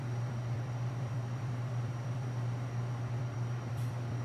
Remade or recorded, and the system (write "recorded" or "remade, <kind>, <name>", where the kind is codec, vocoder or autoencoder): remade, vocoder, BigVGAN v2